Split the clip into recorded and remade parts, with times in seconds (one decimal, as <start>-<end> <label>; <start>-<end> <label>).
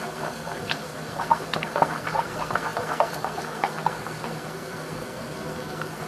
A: 0.0-6.1 remade